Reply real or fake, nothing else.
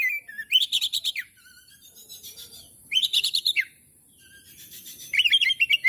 fake